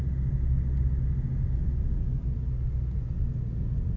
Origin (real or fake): real